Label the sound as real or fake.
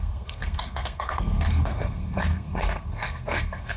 fake